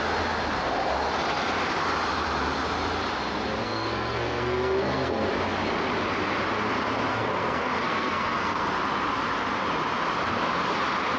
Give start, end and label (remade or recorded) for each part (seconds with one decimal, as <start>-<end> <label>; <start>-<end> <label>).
0.0-3.6 recorded; 3.6-5.3 remade; 5.3-7.1 recorded; 7.1-8.7 remade; 8.7-11.2 recorded